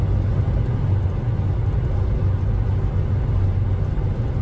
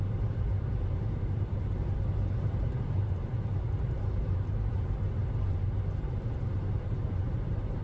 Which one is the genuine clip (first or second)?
first